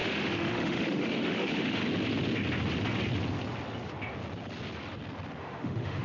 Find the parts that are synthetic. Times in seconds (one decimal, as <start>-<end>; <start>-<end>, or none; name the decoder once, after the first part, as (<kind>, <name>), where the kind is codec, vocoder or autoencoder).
0.0-1.8 (autoencoder, DAC-VAE); 5.4-6.0